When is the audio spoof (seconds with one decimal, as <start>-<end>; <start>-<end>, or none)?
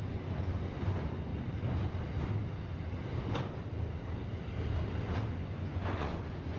0.0-1.3; 5.3-6.6